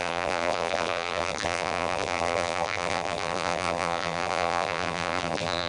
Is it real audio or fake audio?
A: fake